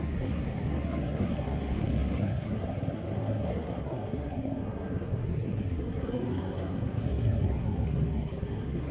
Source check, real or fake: fake